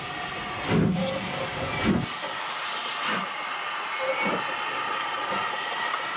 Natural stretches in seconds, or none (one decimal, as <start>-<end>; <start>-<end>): 0.0-6.2